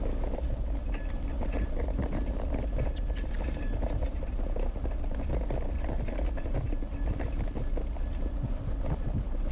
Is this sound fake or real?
real